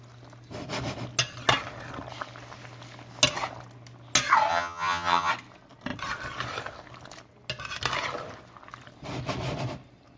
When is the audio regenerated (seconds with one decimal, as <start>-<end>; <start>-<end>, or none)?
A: 4.5-5.3